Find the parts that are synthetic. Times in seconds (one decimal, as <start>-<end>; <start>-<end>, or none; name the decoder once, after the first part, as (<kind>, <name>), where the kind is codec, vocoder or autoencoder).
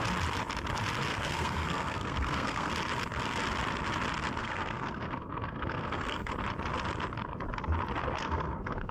1.1-2.7 (codec, SNAC); 4.4-6.3; 8.2-8.9